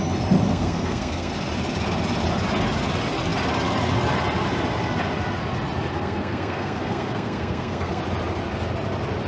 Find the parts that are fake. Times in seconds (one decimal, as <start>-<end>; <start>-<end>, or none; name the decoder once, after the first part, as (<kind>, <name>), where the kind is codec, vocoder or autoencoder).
0.5-1.3 (codec, SNAC); 5.9-8.0